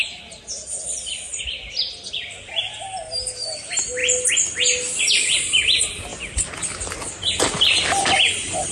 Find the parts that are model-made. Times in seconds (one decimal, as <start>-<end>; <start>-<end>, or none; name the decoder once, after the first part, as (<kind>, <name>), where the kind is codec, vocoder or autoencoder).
none